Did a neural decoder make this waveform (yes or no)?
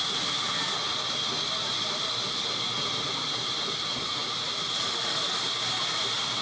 no